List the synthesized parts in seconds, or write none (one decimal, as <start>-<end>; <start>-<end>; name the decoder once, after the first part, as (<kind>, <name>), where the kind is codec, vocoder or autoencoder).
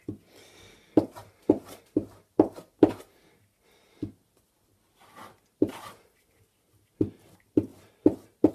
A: 7.7-8.5 (vocoder, BigVGAN v2)